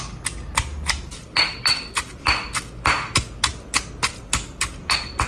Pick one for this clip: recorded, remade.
recorded